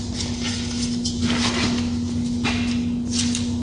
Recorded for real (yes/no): yes